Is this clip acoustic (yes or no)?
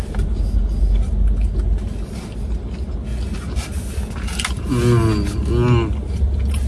yes